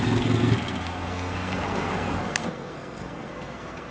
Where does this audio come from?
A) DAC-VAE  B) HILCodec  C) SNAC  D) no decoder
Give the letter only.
C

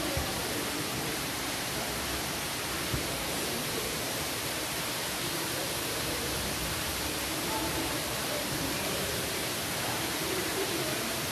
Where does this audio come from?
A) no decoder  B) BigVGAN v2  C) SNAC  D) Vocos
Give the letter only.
B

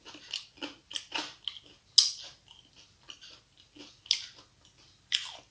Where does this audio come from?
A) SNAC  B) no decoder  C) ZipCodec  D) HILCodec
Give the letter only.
B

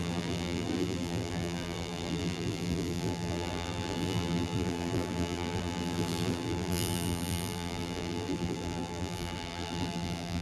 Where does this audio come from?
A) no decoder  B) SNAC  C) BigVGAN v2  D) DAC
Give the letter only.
C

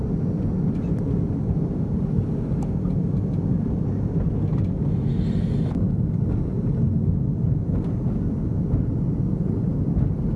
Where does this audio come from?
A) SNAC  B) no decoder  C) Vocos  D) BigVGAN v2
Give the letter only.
B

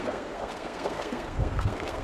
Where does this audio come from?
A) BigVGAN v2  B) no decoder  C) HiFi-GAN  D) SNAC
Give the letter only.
D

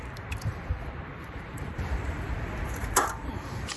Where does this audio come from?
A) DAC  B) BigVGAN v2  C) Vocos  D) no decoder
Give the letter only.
B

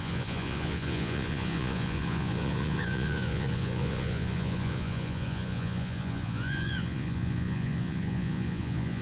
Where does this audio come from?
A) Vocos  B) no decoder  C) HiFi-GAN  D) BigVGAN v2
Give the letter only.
A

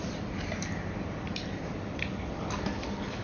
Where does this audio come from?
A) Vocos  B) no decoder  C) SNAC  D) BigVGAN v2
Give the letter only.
B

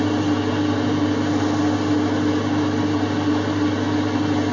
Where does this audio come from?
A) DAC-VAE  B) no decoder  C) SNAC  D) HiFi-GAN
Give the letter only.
B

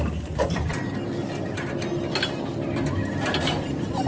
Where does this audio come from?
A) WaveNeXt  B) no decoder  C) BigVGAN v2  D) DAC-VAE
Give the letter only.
B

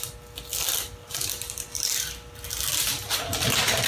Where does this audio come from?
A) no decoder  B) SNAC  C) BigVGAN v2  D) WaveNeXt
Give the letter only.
A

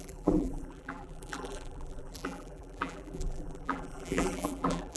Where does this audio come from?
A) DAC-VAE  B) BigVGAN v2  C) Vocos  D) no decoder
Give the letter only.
B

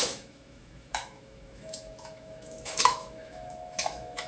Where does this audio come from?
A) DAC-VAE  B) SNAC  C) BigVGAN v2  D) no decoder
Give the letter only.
A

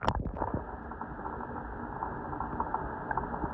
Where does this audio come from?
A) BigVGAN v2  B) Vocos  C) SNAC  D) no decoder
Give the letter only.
D